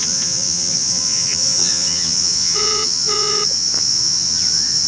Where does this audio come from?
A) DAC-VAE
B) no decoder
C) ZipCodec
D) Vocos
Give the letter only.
D